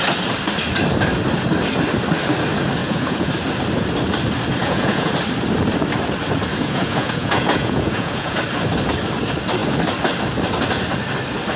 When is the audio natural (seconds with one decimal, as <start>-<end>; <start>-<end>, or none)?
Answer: 0.0-2.8; 3.3-4.6; 5.1-6.5; 8.4-11.6